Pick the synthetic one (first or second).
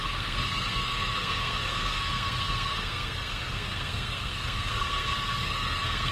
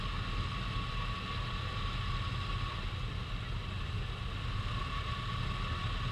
first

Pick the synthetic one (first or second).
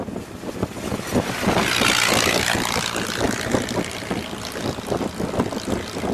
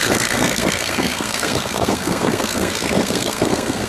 second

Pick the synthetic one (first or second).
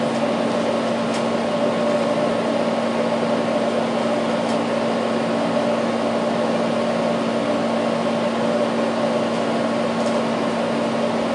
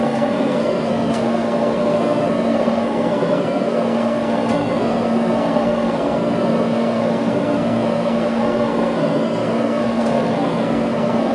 second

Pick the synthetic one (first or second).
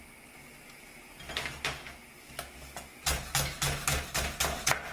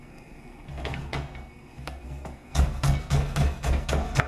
second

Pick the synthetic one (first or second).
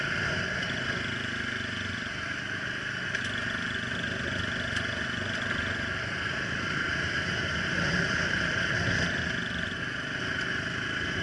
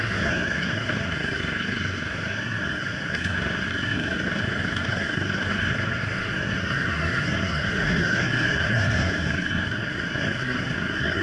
second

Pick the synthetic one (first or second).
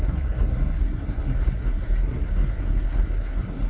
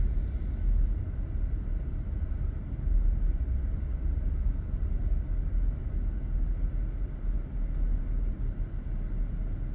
first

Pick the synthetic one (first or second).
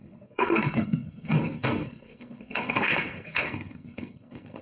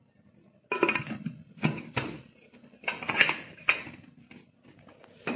first